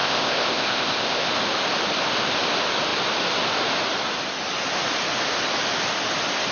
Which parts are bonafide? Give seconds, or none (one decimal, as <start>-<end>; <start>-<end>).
1.3-6.5